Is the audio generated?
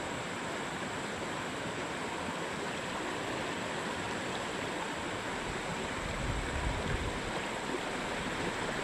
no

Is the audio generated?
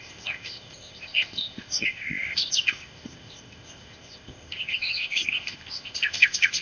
yes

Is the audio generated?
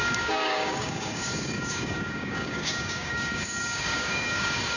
yes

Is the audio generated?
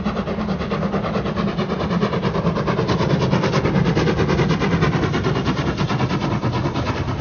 no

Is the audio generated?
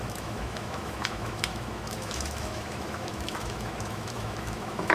yes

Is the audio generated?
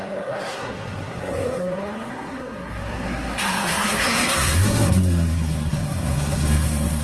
yes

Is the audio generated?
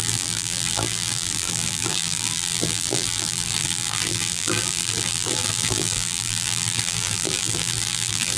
yes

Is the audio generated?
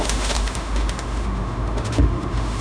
yes